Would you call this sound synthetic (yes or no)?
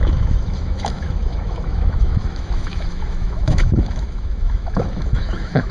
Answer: yes